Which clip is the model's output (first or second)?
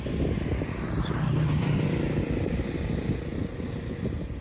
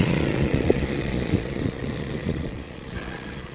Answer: second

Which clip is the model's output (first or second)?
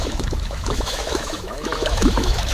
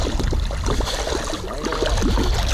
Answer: first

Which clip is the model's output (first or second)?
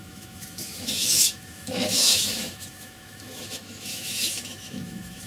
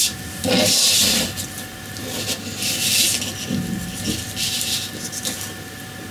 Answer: first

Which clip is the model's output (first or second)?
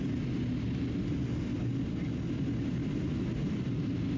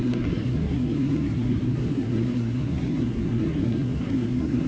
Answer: second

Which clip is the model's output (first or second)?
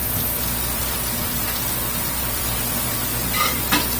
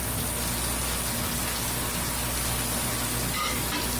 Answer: first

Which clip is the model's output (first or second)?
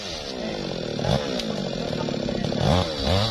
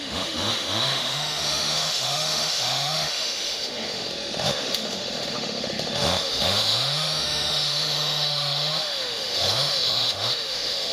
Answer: second